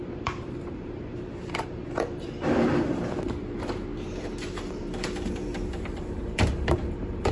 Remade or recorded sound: remade